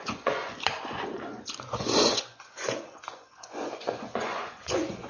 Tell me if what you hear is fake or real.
fake